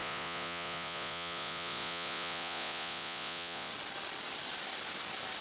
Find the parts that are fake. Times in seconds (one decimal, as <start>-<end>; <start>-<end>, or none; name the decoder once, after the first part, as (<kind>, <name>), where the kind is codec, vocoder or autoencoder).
0.0-3.7 (vocoder, Vocos)